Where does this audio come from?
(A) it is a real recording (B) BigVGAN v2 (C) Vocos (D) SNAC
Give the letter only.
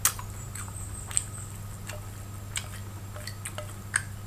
A